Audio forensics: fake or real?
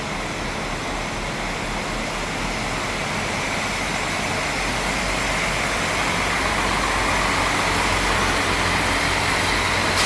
real